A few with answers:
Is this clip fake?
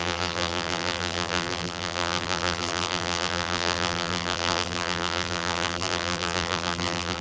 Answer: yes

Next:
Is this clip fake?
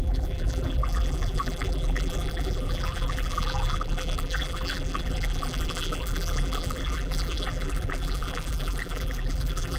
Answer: yes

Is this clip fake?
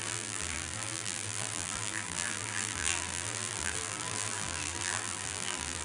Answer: yes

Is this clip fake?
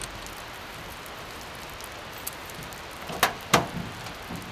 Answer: no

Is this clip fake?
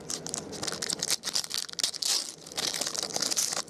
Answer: no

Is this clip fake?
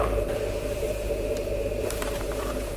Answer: yes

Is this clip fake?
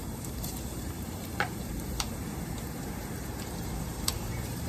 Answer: yes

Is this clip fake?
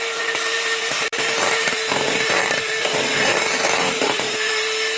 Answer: yes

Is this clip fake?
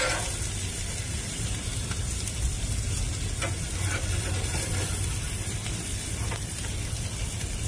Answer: no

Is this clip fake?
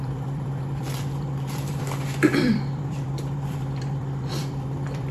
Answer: yes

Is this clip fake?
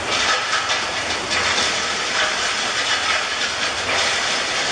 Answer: yes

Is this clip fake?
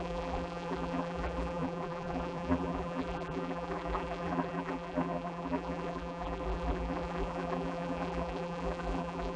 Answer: yes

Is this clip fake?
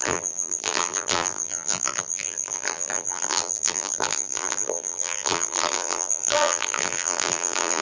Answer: yes